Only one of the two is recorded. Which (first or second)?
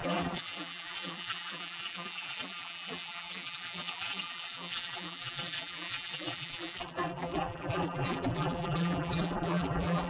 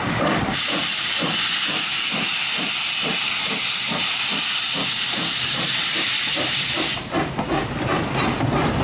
second